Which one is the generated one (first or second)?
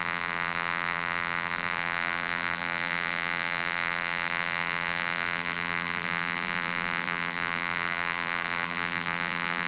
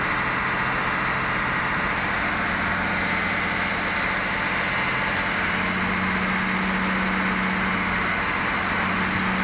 first